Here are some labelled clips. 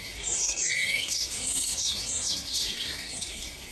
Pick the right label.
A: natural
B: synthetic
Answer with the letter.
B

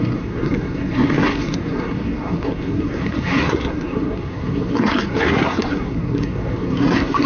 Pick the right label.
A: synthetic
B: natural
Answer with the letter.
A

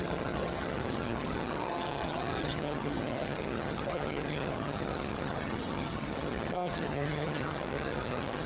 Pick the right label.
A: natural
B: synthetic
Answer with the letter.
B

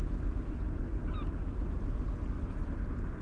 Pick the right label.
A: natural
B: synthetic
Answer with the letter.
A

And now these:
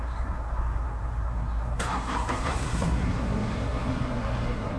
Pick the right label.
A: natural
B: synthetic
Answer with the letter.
B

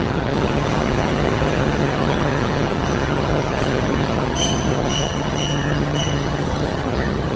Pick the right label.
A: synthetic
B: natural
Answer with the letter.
A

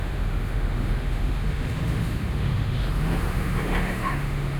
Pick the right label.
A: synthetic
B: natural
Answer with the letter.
A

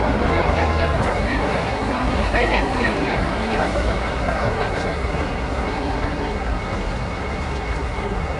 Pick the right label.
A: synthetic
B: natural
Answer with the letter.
A